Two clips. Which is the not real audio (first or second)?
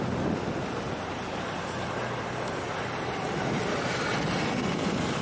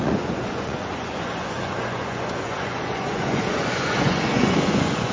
second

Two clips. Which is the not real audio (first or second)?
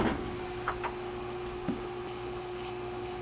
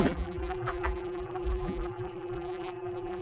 second